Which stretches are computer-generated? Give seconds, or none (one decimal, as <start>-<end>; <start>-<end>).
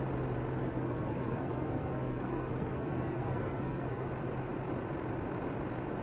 0.6-4.1